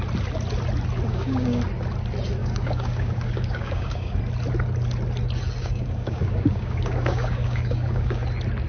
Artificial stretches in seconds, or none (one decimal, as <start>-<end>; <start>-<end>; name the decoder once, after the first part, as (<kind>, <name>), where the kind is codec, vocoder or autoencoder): 1.1-1.6 (codec, DAC); 2.4-4.2; 5.6-8.2